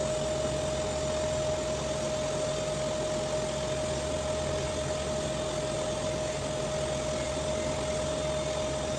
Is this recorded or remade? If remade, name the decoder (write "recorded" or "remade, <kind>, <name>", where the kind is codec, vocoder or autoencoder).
recorded